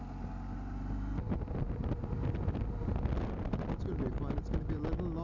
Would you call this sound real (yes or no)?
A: yes